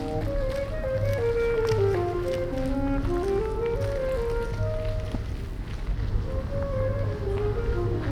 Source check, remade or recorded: recorded